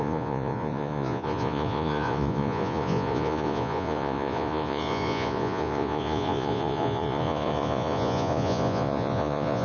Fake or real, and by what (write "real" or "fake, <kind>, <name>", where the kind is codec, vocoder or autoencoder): fake, vocoder, Vocos